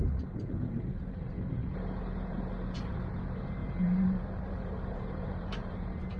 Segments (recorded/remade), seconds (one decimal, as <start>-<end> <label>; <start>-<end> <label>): 0.0-3.6 recorded; 3.6-5.8 remade; 5.8-6.2 recorded